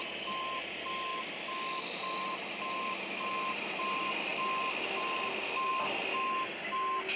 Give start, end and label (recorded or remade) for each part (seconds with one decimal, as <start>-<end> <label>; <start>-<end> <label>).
0.0-7.2 recorded